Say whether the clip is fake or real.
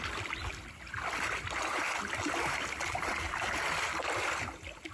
real